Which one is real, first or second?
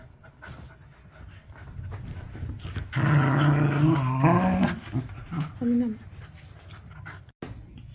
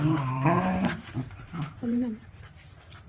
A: first